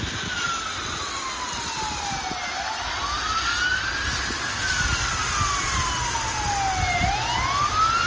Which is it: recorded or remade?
recorded